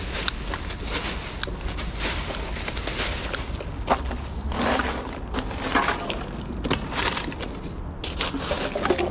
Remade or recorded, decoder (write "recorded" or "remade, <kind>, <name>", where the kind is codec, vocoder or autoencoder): recorded